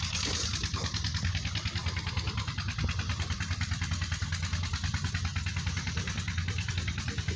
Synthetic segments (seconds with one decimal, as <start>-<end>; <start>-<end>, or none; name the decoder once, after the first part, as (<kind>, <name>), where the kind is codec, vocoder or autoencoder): 1.8-3.9 (vocoder, BigVGAN v2); 5.3-6.7